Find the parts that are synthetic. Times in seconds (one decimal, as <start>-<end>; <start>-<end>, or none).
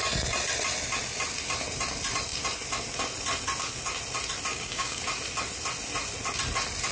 4.5-5.0